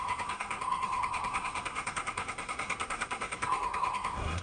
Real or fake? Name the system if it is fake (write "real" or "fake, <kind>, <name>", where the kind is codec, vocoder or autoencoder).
fake, codec, SNAC